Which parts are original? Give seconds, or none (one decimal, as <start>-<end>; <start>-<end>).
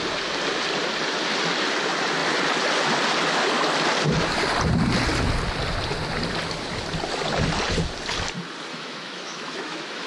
0.0-8.7